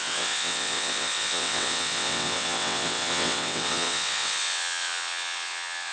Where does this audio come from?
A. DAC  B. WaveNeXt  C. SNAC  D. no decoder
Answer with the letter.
B